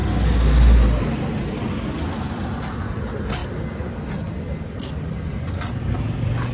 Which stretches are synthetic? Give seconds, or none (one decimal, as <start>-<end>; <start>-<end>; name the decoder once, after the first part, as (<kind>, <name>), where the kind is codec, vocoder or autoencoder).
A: none